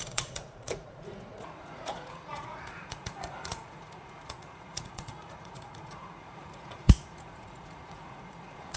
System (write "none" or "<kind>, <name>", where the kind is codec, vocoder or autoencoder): vocoder, Vocos